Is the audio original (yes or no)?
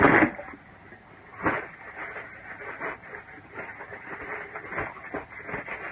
yes